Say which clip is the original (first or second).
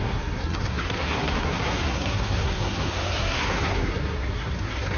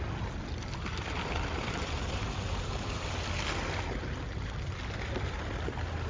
second